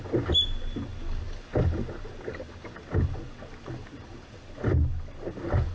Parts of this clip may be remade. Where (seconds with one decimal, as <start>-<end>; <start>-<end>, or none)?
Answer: none